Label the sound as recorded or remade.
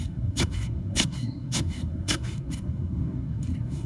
remade